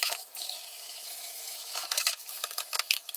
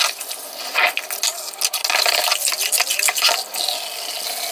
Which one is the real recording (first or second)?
second